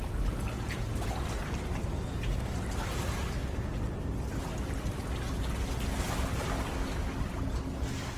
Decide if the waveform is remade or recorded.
recorded